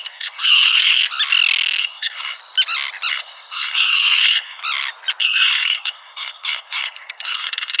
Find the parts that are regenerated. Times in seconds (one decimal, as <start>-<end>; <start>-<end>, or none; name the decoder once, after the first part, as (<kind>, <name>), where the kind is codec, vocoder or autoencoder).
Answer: 0.0-1.0 (codec, SNAC); 1.8-2.4; 3.1-4.6; 5.2-7.8